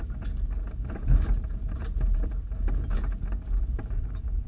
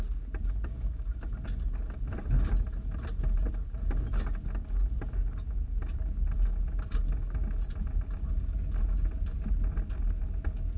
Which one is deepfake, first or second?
first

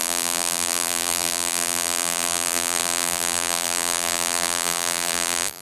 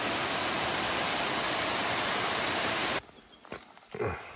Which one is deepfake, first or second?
first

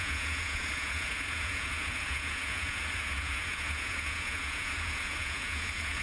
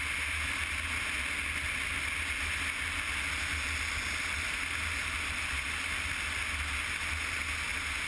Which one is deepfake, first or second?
first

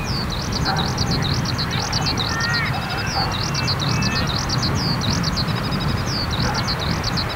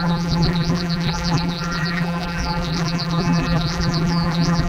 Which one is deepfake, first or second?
second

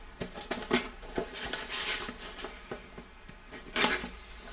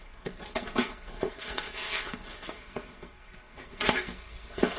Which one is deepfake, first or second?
second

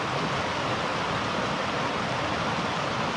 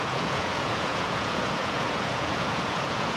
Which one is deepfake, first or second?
second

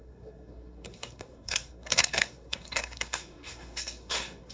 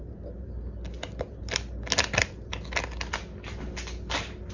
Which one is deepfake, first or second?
first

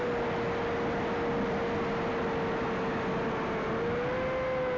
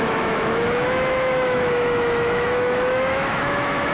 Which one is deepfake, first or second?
second